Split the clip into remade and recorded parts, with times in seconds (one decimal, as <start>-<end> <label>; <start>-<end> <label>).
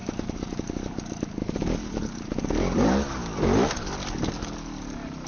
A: 0.0-3.2 remade; 3.2-5.3 recorded